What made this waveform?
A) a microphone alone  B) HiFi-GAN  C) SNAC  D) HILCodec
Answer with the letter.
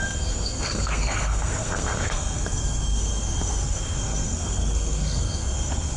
C